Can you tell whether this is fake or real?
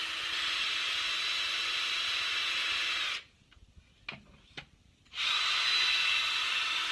real